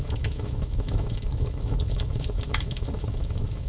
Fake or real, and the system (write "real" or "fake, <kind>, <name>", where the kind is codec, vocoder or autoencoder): fake, autoencoder, DAC-VAE